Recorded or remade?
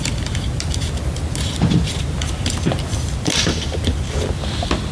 recorded